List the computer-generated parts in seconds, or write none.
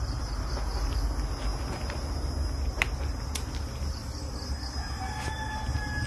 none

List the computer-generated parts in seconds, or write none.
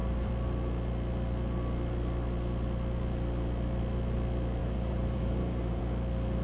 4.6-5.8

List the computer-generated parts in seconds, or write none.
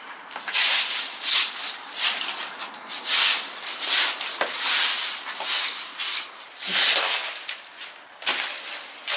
none